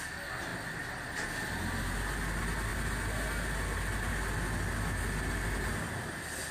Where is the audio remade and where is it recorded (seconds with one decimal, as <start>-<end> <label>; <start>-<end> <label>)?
0.0-6.5 recorded